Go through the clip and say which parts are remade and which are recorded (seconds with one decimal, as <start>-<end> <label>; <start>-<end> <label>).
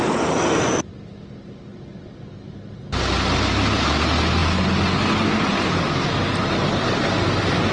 0.0-7.7 recorded